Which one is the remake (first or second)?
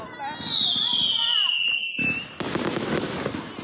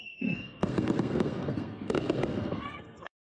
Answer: second